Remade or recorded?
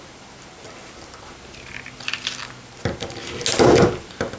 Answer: recorded